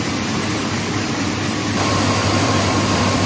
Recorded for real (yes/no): no